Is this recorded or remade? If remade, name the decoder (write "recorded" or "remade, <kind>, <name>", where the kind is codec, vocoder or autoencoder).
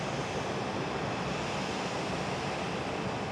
recorded